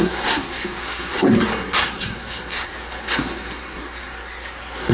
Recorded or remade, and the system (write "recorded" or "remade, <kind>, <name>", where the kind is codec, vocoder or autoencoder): remade, codec, SNAC